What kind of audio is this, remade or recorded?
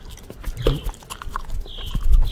recorded